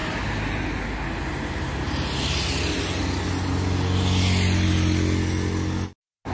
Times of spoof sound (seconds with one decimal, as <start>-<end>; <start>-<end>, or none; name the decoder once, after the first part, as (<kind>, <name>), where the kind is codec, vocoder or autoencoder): none